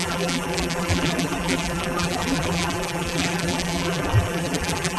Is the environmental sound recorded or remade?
remade